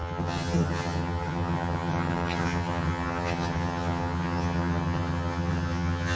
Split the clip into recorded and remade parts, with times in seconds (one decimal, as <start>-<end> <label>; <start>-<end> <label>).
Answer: 0.0-6.2 remade